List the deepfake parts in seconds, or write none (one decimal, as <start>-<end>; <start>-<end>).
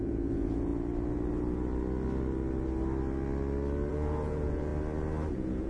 0.0-0.7; 3.9-4.7; 5.3-5.7